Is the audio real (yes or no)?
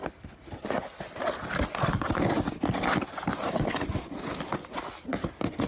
yes